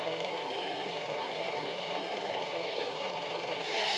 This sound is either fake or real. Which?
fake